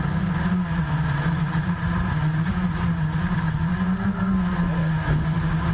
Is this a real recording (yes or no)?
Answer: yes